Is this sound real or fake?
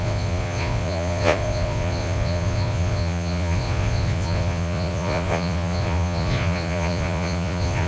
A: fake